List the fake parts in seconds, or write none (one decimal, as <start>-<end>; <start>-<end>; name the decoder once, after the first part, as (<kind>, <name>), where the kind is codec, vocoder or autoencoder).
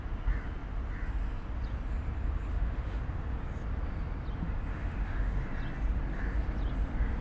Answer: 2.5-3.0 (autoencoder, DAC-VAE); 4.7-5.4